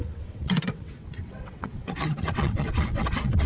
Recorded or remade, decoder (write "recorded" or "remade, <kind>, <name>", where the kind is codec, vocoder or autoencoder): remade, vocoder, WaveNeXt